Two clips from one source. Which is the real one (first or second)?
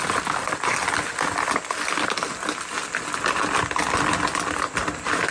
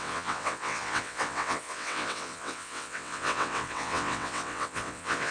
first